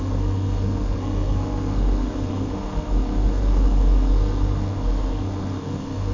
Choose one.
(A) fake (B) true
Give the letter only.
A